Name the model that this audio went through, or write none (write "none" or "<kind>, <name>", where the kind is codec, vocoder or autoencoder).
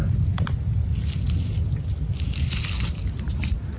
none